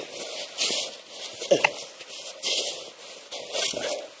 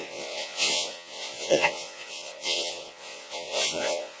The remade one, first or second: second